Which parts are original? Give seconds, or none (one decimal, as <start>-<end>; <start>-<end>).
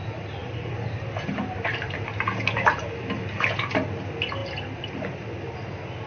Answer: 0.0-0.4; 2.5-6.1